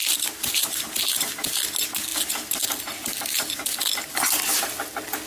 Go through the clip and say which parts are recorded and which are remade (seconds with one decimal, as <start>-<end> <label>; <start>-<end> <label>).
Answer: 0.0-1.3 remade; 1.3-5.3 recorded